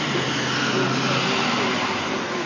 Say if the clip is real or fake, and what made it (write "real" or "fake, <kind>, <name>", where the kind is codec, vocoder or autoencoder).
real